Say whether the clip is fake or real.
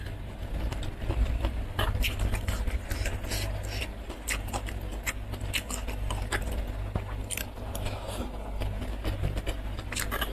real